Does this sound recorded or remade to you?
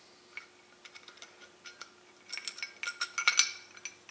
recorded